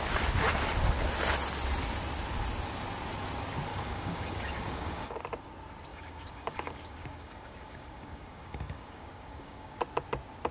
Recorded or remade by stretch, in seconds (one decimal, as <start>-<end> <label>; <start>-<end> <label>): 0.0-3.7 recorded; 3.7-5.2 remade; 5.2-5.9 recorded; 5.9-9.8 remade; 9.8-10.5 recorded